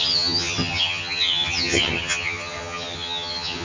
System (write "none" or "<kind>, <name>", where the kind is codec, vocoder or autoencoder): vocoder, HiFi-GAN